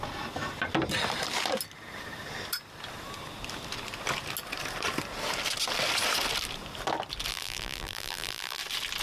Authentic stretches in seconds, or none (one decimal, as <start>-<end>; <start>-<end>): 0.0-7.3; 8.6-9.0